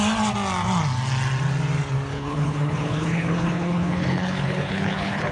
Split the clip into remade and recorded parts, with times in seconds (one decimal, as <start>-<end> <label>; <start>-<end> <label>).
0.0-2.1 recorded; 2.1-5.3 remade